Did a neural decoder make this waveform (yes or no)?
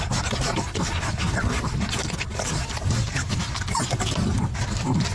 no